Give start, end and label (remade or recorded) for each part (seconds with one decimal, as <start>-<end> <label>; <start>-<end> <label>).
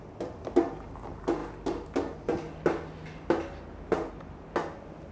0.0-5.1 recorded